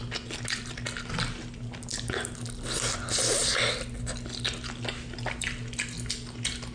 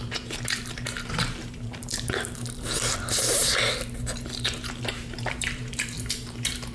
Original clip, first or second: first